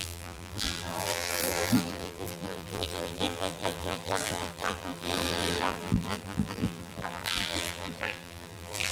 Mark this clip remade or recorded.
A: remade